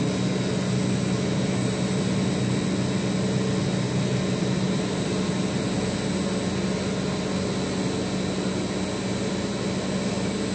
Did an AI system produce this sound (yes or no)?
no